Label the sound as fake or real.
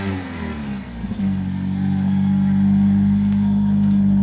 fake